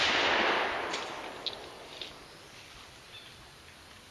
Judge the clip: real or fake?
real